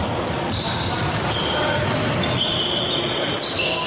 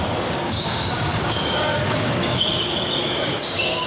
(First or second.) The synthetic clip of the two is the second